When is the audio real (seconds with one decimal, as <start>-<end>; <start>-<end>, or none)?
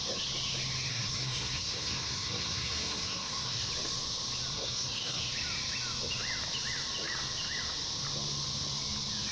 0.0-0.9; 3.7-4.5; 5.2-9.3